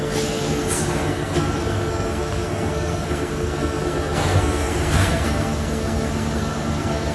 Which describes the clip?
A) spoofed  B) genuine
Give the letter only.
A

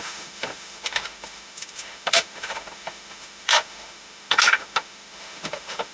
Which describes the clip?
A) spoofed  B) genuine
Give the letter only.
A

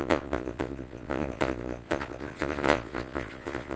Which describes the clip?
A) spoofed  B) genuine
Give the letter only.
A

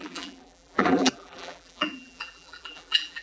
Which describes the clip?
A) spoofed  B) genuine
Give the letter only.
A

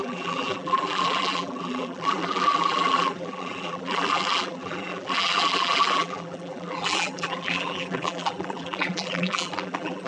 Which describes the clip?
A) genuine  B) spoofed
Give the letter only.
B